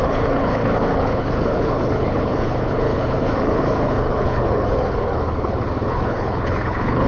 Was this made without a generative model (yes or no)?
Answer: no